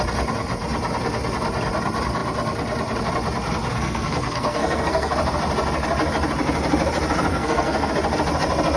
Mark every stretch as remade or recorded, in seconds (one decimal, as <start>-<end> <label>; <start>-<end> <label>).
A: 0.0-3.7 recorded; 3.7-5.1 remade; 5.1-7.3 recorded; 7.3-7.9 remade; 7.9-8.8 recorded